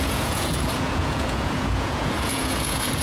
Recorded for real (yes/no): no